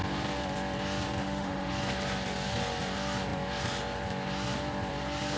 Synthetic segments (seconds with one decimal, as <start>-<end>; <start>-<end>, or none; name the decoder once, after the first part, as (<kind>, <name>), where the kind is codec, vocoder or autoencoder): 1.2-1.7 (autoencoder, DAC-VAE)